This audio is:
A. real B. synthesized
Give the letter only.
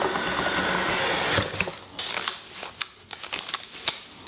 A